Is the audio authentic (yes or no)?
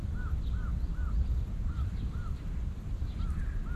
yes